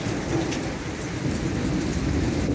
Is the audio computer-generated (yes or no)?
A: no